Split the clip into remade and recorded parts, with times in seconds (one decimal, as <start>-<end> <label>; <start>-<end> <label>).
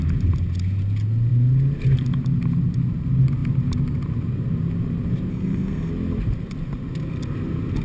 0.0-5.3 recorded; 5.3-5.9 remade; 5.9-7.8 recorded